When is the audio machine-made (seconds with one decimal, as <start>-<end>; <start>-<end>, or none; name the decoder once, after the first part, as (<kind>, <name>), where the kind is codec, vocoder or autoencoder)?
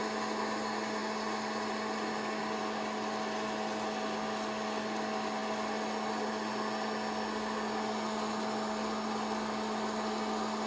none